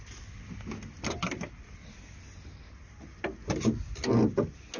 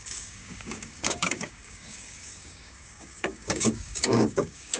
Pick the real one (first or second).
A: first